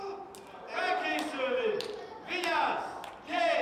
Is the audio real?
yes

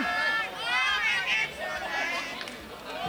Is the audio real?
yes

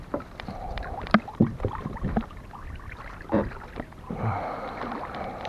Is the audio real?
no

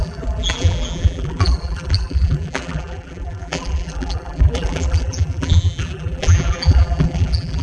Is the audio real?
no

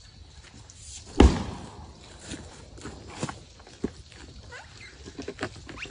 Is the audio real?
yes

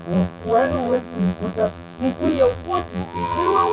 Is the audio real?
no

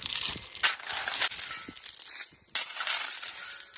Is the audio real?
yes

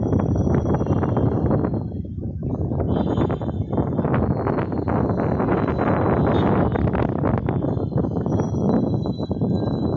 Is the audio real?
yes